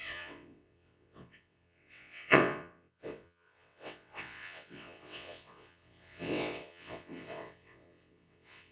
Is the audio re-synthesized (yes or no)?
yes